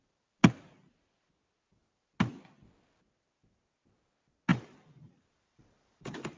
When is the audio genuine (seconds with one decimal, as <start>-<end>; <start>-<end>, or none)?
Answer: 0.0-4.5

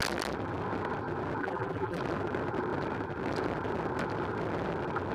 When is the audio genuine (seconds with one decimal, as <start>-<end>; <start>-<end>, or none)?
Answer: 0.0-1.4; 2.0-5.1

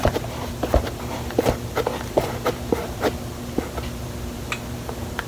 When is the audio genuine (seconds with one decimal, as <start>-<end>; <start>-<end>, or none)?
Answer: 3.2-5.3

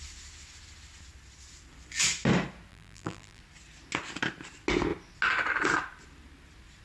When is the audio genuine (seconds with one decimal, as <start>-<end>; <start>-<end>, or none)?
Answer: 0.0-2.7; 3.4-6.8

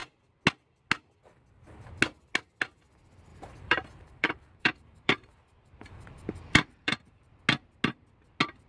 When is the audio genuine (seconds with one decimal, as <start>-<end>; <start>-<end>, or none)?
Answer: 0.0-3.3; 7.4-8.7